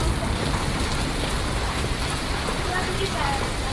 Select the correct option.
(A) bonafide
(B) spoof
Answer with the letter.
A